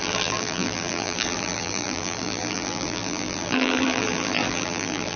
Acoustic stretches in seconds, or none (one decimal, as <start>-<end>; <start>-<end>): none